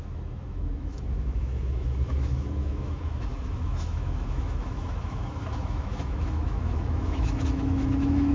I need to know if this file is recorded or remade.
remade